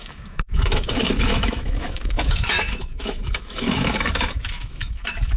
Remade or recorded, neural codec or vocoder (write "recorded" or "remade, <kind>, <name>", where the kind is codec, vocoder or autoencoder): remade, autoencoder, DAC-VAE